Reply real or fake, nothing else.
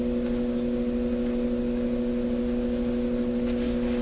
real